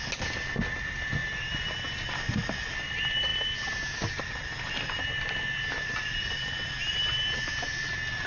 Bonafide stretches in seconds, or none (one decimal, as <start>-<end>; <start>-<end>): 0.0-8.3